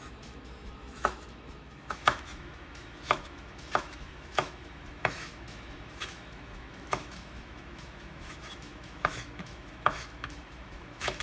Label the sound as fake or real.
fake